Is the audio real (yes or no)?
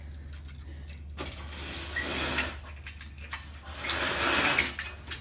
yes